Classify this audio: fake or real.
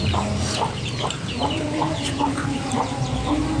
fake